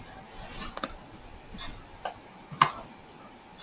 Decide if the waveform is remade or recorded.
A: recorded